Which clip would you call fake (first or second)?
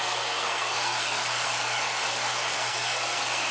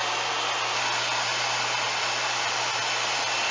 first